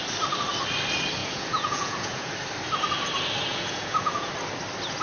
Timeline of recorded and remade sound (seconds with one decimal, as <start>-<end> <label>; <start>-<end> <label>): 0.0-1.2 recorded; 1.2-2.3 remade; 2.3-3.5 recorded; 3.5-4.3 remade; 4.3-5.0 recorded